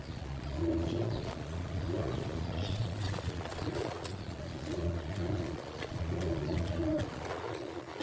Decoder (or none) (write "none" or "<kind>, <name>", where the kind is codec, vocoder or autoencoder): vocoder, Vocos